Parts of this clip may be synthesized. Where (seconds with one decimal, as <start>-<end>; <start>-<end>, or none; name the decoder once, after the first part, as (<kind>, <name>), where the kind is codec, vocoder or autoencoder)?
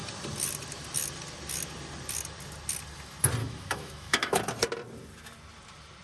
3.4-4.4 (autoencoder, DAC-VAE)